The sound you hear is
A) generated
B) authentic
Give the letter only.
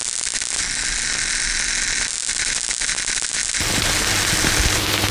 B